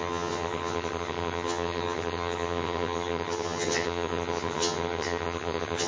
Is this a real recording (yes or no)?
no